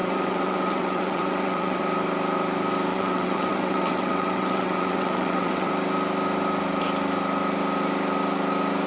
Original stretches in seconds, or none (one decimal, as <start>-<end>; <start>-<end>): 1.8-2.9; 5.7-8.9